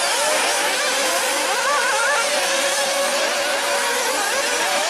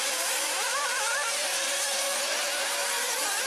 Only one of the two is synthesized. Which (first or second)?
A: second